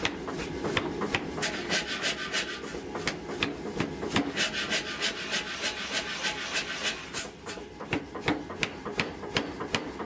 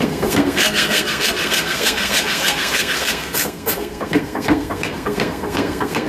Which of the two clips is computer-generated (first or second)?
second